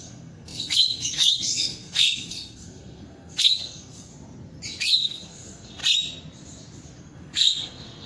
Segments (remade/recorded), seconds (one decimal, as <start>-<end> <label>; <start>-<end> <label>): 0.0-4.1 remade; 4.1-4.8 recorded; 4.8-5.8 remade; 5.8-7.0 recorded; 7.0-8.1 remade